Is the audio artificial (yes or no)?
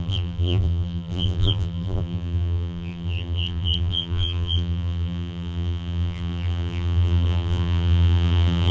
yes